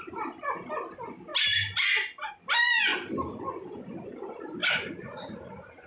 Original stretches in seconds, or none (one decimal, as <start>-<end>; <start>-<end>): 0.0-2.9; 3.5-4.6; 5.5-5.9